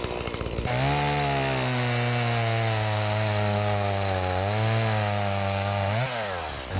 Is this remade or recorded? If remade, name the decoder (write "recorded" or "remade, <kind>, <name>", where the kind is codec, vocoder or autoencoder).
recorded